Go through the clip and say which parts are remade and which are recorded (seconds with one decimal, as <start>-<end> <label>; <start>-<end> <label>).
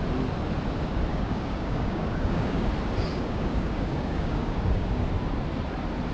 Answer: 0.0-1.1 recorded; 1.1-2.7 remade; 2.7-3.1 recorded; 3.1-5.0 remade; 5.0-6.1 recorded